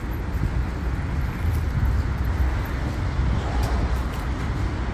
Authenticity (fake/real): real